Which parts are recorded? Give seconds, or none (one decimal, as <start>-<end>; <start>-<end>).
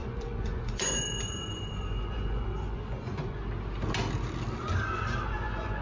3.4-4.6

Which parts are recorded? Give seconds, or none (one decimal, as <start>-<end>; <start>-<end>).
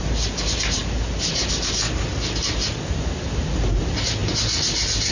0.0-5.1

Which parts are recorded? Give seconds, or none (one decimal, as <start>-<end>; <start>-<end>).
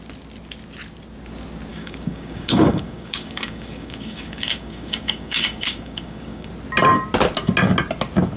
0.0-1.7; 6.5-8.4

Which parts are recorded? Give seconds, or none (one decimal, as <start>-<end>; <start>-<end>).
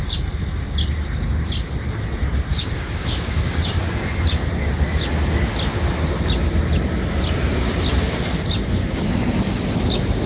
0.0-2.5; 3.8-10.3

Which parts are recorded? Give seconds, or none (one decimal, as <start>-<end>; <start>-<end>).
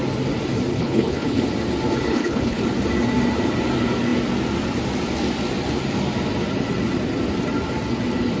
0.0-0.7; 1.4-2.1; 2.6-8.4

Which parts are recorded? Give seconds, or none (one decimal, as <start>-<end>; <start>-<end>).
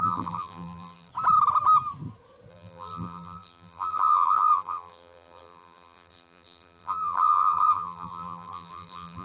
1.1-2.5